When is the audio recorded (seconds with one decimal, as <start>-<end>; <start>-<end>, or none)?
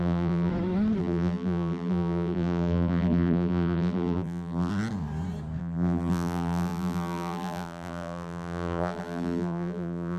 0.5-1.0; 4.7-5.6